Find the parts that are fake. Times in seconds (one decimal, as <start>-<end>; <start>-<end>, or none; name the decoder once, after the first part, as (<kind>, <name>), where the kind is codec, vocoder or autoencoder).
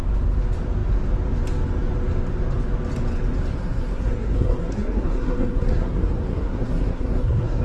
3.5-7.6 (codec, SNAC)